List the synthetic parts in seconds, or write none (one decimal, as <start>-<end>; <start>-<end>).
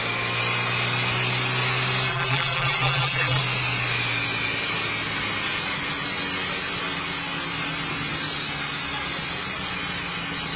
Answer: 2.1-3.4